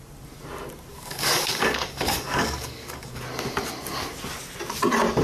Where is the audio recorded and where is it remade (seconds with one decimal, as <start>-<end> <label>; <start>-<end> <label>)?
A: 0.0-0.9 recorded; 0.9-3.2 remade; 3.2-5.2 recorded